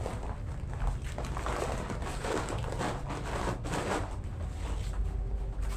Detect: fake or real real